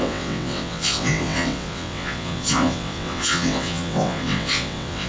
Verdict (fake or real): fake